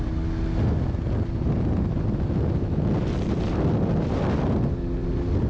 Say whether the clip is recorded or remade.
recorded